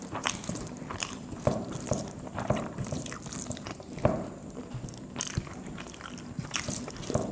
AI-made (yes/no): yes